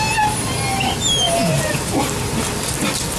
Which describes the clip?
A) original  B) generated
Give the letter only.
A